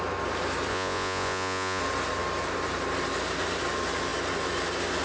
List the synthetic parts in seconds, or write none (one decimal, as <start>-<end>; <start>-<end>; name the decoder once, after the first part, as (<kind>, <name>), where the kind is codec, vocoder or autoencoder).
0.7-1.8 (vocoder, Vocos)